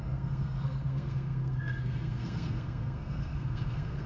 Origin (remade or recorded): remade